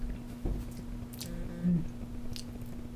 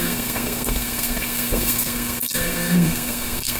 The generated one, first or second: second